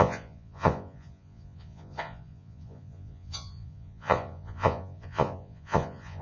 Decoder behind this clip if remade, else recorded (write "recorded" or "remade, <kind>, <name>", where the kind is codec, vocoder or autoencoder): remade, vocoder, Vocos